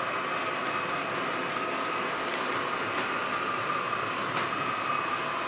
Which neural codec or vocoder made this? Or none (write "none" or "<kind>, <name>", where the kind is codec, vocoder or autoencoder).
none